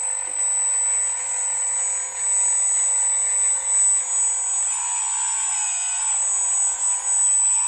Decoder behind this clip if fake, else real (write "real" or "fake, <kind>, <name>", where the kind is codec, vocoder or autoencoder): real